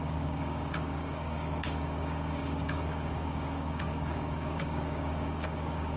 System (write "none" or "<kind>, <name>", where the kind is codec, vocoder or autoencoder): codec, DAC